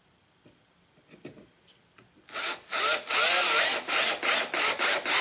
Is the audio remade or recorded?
recorded